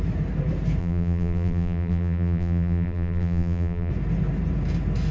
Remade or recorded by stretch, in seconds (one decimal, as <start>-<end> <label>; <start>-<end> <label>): 0.0-0.8 recorded; 0.8-3.9 remade; 3.9-5.1 recorded